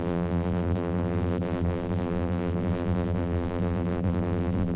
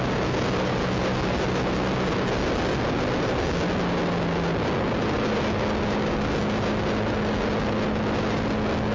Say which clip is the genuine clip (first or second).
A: second